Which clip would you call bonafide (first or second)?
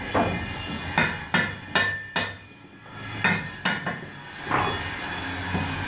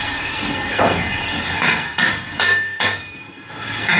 first